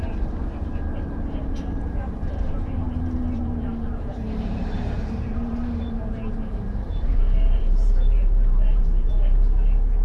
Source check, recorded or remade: remade